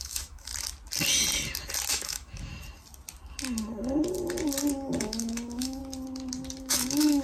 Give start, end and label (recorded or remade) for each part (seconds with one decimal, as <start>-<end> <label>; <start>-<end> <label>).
0.0-0.5 remade; 0.5-1.9 recorded; 1.9-2.5 remade; 2.5-5.0 recorded; 5.0-5.8 remade; 5.8-6.6 recorded; 6.6-7.2 remade